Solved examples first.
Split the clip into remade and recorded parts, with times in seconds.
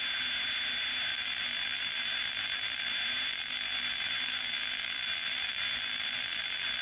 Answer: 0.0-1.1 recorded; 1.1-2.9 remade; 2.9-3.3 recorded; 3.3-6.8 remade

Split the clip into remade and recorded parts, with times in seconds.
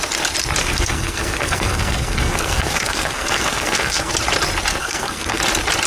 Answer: 0.0-0.6 recorded; 0.6-4.1 remade; 4.1-4.7 recorded; 4.7-5.4 remade; 5.4-5.9 recorded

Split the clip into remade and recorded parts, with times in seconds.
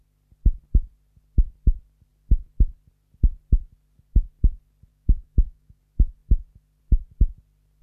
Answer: 0.0-4.9 recorded; 4.9-5.8 remade; 5.8-7.8 recorded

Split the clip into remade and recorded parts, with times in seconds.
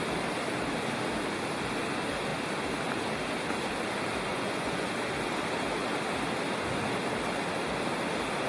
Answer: 0.0-4.3 recorded; 4.3-4.9 remade; 4.9-8.5 recorded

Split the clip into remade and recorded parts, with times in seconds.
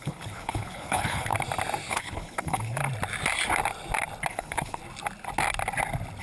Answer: 0.0-1.3 remade; 1.3-1.9 recorded; 1.9-2.8 remade; 2.8-4.3 recorded; 4.3-4.8 remade; 4.8-6.2 recorded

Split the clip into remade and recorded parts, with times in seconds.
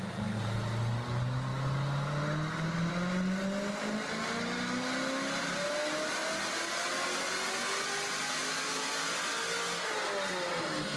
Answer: 0.0-11.0 recorded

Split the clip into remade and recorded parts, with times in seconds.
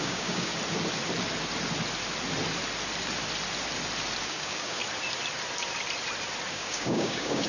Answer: 0.0-0.5 remade; 0.5-4.2 recorded; 4.2-4.8 remade; 4.8-6.5 recorded; 6.5-7.5 remade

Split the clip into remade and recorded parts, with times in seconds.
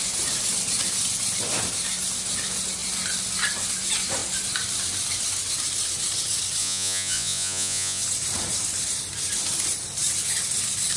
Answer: 0.0-6.6 recorded; 6.6-8.0 remade; 8.0-11.0 recorded